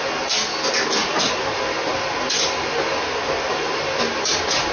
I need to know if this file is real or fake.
real